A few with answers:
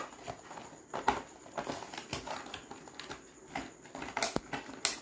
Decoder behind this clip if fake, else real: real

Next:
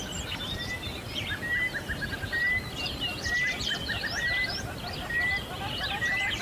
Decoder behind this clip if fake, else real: real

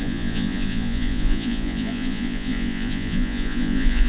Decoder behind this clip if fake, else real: fake, vocoder, Vocos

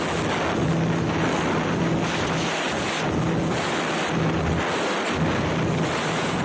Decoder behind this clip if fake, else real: real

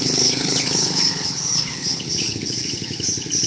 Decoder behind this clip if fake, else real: fake, codec, HILCodec